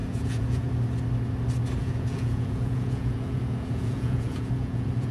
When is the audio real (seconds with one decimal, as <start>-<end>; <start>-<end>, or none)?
0.7-1.8